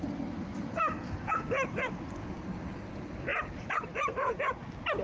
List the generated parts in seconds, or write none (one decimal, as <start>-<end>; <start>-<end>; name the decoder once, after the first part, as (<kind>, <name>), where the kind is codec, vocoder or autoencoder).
3.3-4.4 (vocoder, BigVGAN v2)